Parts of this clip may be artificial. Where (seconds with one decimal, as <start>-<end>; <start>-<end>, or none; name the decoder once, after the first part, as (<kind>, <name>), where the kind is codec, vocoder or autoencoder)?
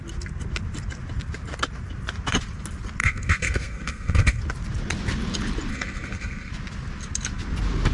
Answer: 3.0-4.4 (codec, SNAC); 5.7-6.5